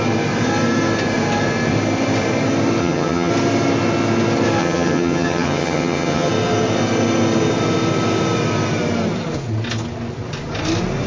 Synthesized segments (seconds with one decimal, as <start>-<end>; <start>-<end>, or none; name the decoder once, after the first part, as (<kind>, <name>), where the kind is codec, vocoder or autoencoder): 2.8-3.3 (vocoder, HiFi-GAN); 4.6-6.3